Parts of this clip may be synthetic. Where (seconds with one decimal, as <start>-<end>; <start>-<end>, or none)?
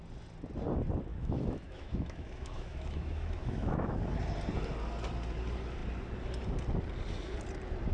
1.1-4.0